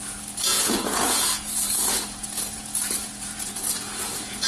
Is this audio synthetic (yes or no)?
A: yes